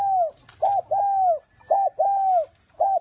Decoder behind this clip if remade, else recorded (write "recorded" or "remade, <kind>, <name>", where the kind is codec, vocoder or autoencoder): recorded